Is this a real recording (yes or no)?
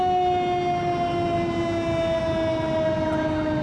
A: yes